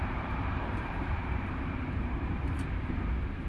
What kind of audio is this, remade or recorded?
remade